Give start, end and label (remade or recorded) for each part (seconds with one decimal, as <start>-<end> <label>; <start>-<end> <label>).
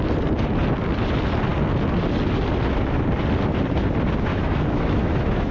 0.0-4.3 recorded; 4.3-5.5 remade